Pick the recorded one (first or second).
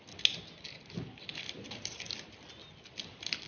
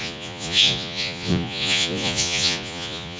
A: first